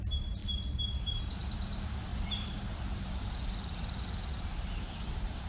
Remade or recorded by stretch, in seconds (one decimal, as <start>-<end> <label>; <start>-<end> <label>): 0.0-0.4 remade; 0.4-1.2 recorded; 1.2-5.5 remade